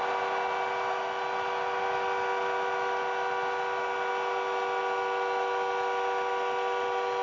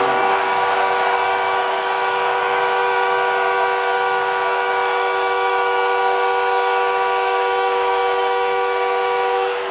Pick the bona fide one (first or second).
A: first